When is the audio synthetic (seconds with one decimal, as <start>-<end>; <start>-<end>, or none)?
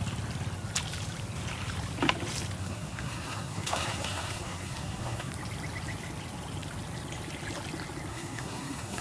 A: 2.6-5.3; 8.1-9.0